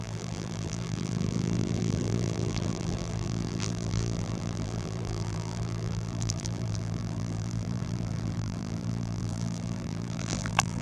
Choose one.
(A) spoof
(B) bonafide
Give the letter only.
A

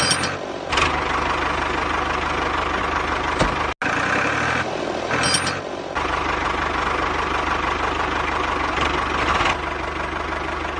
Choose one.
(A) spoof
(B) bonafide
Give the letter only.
B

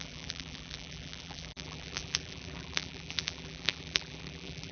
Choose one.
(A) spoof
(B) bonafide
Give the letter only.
A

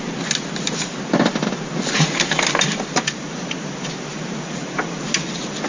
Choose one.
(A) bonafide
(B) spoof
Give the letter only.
A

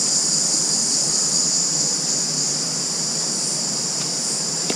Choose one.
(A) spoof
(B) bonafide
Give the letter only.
B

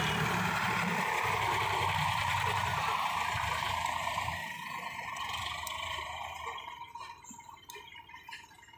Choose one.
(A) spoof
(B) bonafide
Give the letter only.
A